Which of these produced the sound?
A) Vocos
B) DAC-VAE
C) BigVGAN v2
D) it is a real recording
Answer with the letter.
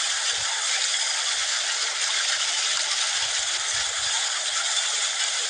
D